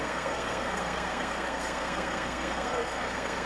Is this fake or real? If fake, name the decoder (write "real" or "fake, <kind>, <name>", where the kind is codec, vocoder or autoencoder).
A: fake, codec, SNAC